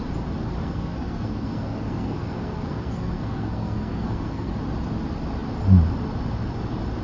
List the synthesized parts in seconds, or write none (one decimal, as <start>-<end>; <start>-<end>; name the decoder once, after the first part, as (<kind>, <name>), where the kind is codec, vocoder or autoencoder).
0.6-4.5 (codec, SNAC)